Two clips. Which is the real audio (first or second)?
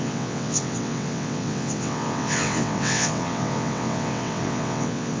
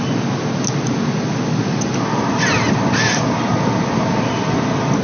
second